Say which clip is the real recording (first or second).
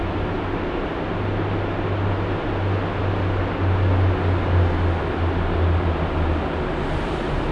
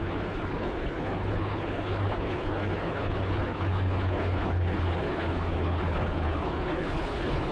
first